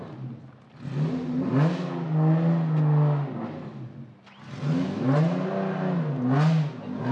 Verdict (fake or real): real